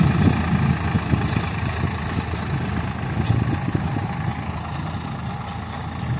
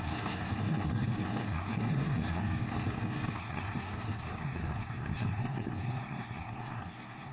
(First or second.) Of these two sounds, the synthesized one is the second